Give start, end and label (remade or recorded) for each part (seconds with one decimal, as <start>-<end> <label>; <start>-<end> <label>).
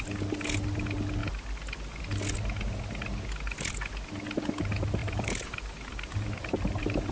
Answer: 0.0-5.0 recorded; 5.0-7.1 remade